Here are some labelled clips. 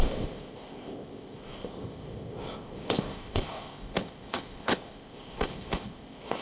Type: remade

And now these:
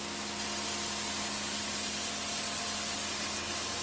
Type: recorded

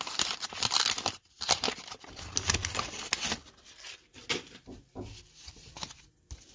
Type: recorded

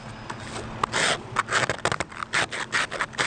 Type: recorded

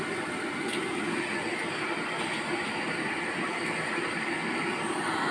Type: recorded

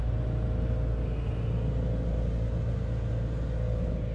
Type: recorded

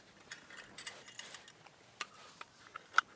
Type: recorded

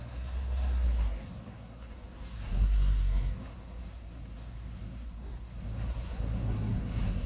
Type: remade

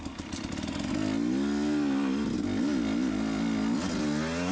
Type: recorded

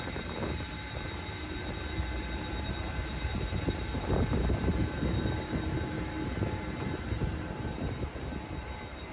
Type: remade